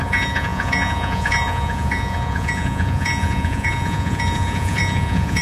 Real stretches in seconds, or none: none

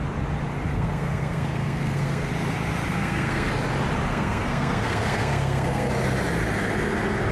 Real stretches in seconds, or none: 0.0-0.7; 2.3-2.9; 3.5-4.1; 5.9-7.3

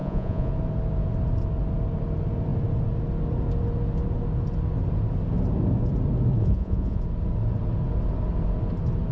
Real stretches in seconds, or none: 0.5-6.4; 7.0-9.1

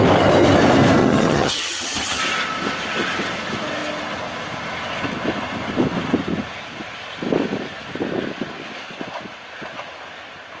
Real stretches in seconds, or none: 0.0-1.0; 2.2-10.6

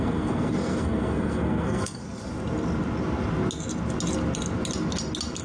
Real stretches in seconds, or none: 2.0-5.4